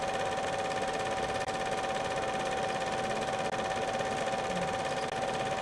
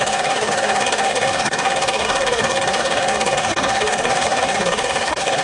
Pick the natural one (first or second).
first